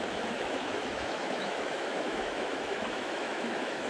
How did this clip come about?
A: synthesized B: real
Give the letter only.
A